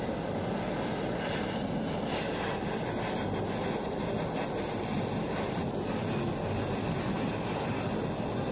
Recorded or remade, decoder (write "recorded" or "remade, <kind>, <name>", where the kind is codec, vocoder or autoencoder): recorded